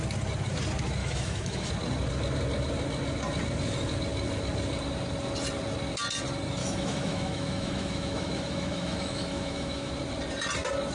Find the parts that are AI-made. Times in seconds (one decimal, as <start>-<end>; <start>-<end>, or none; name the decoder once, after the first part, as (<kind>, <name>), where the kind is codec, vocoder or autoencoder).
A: 1.0-1.7 (autoencoder, DAC-VAE); 6.6-9.9

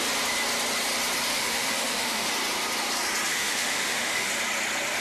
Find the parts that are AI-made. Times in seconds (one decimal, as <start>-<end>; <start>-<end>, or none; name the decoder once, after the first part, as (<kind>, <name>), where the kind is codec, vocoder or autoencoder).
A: 1.3-2.3 (autoencoder, DAC-VAE); 3.3-4.3

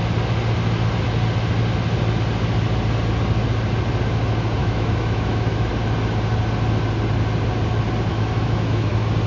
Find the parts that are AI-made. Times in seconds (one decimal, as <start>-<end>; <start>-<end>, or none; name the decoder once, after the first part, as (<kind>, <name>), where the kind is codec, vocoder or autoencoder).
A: 4.6-5.7 (autoencoder, DAC-VAE); 8.1-8.9

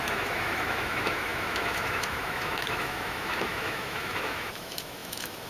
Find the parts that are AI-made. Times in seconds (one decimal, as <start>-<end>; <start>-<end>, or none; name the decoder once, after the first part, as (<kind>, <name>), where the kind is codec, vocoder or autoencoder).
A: 0.0-5.5 (autoencoder, DAC-VAE)

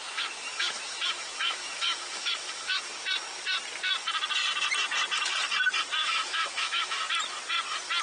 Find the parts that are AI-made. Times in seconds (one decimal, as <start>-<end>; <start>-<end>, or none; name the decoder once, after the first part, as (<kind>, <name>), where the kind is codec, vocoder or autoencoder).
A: 0.0-2.8 (autoencoder, DAC-VAE); 6.0-7.0